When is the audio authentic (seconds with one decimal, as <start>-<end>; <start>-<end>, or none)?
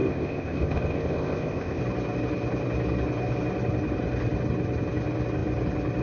1.8-6.0